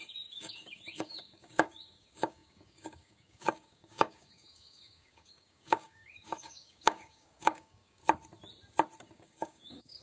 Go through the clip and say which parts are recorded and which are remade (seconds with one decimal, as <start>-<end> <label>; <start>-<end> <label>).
0.0-8.0 remade; 8.0-9.1 recorded; 9.1-10.0 remade